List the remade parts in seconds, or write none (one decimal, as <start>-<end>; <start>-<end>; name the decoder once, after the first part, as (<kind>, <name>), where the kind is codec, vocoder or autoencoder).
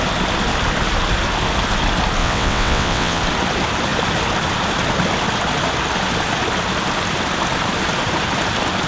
2.2-3.2 (vocoder, WaveNeXt)